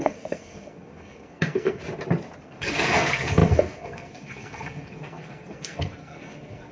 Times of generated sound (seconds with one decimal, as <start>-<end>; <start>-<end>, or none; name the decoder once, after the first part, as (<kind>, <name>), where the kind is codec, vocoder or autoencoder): 0.0-1.8 (codec, SNAC); 2.4-6.7